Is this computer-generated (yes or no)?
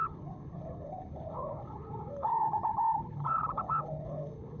yes